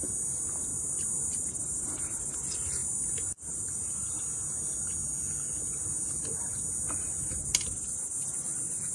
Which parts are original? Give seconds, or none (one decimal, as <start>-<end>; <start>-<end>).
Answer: 0.0-0.7; 1.6-8.9